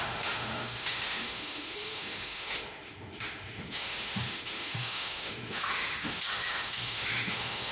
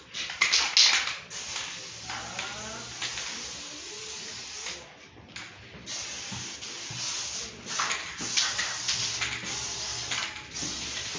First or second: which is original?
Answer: second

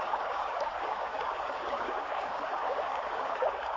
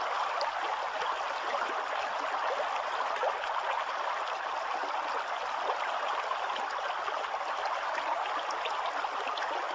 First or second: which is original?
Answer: second